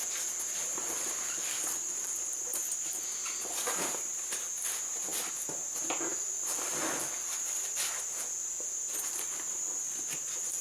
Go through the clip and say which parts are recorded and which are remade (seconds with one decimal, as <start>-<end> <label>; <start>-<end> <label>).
0.0-0.8 recorded; 0.8-2.9 remade; 2.9-10.6 recorded